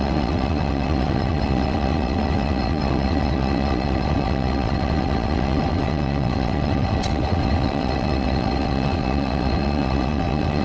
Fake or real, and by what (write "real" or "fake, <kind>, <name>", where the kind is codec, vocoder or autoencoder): fake, vocoder, WaveNeXt